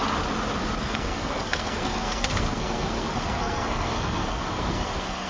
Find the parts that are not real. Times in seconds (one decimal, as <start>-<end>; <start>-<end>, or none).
0.8-5.3